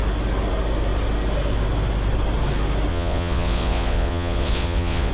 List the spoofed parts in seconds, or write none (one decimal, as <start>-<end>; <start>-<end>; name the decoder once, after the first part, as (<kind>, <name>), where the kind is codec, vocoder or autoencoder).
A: 2.9-5.1 (vocoder, Vocos)